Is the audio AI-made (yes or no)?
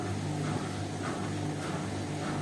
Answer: no